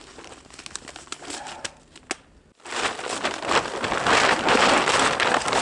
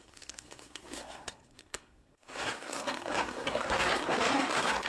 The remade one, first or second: second